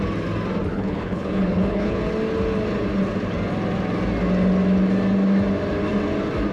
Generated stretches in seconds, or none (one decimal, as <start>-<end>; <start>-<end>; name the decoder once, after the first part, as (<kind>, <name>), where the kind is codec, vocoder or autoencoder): 0.7-2.0 (codec, HILCodec)